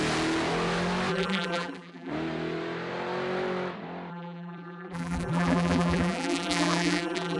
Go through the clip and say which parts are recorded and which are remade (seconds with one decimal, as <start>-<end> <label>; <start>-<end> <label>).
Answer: 0.0-1.1 recorded; 1.1-2.1 remade; 2.1-4.1 recorded; 4.1-7.4 remade